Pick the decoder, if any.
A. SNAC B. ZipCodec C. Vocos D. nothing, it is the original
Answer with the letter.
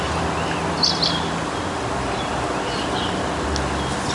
D